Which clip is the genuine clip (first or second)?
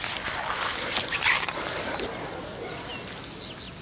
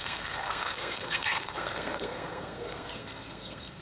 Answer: first